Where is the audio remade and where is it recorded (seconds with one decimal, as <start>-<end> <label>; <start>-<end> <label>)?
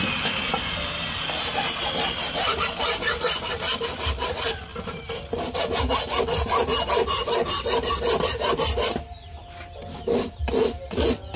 0.0-11.4 recorded